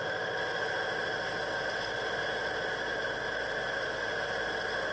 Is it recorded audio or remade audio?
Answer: recorded